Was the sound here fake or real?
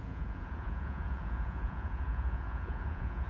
fake